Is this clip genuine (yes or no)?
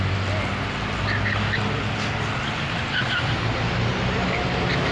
yes